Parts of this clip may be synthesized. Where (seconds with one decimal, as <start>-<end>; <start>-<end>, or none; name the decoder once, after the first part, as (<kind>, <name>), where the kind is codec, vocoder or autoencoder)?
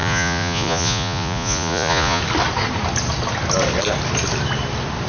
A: 0.0-2.2 (vocoder, Vocos)